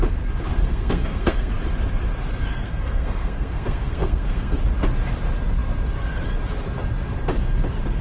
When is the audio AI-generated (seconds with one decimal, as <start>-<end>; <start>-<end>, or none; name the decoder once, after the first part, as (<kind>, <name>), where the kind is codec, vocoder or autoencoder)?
0.5-1.5 (codec, SNAC); 2.5-4.6